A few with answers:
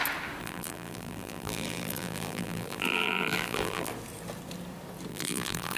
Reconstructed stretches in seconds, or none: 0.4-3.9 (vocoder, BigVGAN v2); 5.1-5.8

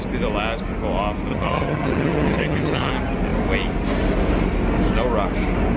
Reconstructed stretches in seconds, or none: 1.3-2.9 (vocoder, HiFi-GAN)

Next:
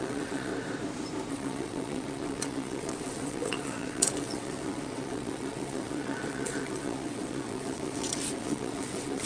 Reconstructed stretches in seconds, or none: 0.0-0.5 (vocoder, WaveNeXt); 1.3-9.3